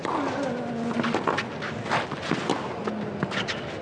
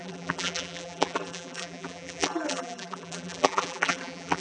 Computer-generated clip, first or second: second